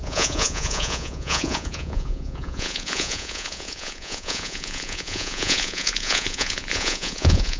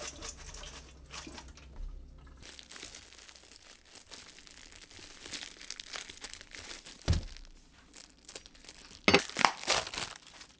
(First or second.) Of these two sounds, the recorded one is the second